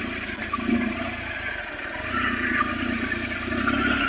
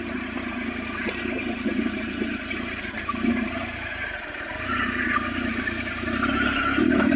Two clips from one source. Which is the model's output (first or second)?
second